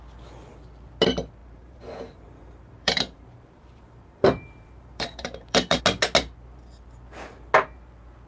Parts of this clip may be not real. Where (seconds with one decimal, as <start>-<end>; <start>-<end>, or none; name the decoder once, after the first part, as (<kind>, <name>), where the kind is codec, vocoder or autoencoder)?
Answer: 1.4-5.8 (vocoder, BigVGAN v2)